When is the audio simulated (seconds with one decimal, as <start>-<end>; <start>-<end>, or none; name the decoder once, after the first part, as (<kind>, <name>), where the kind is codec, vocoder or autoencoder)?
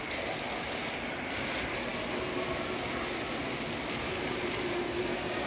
none